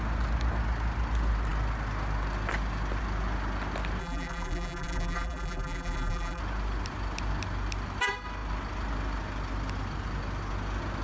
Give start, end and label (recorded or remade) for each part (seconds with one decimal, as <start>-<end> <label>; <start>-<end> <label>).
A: 0.0-4.0 recorded; 4.0-6.4 remade; 6.4-11.0 recorded